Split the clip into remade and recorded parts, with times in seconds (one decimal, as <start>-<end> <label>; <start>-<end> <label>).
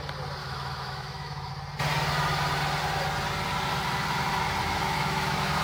0.0-0.4 recorded; 0.4-1.5 remade; 1.5-4.6 recorded; 4.6-5.6 remade